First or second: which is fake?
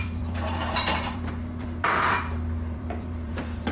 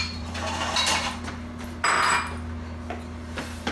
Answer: first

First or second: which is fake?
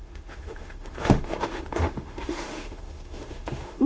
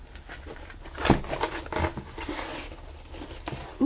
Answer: first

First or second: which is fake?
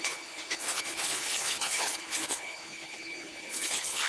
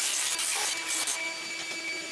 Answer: first